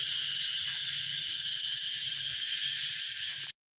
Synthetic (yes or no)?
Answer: no